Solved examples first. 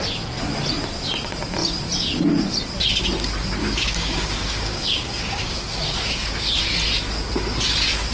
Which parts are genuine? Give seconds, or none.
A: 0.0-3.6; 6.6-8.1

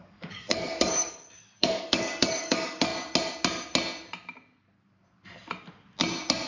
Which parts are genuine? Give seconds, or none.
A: 2.9-6.5

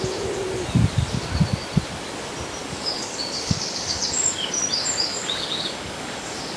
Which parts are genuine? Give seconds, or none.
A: 0.0-2.6; 4.5-5.1

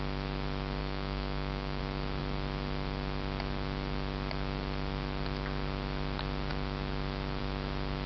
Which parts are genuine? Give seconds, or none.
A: 0.0-0.8; 1.8-8.1